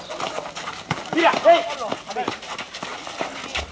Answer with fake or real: real